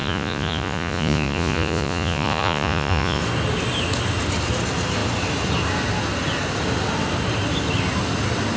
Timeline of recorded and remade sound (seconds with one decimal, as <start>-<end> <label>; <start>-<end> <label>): 0.0-3.2 remade; 3.2-8.6 recorded